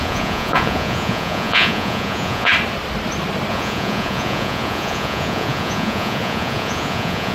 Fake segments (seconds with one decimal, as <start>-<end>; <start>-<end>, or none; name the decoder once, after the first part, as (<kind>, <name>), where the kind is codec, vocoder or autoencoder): 0.0-2.5 (vocoder, Vocos); 3.5-7.3